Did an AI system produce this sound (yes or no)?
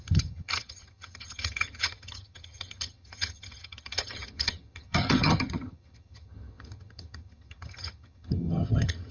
yes